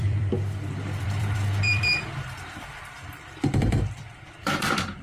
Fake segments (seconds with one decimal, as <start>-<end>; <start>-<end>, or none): 0.0-5.0